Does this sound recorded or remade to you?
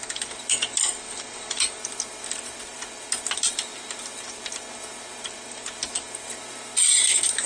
recorded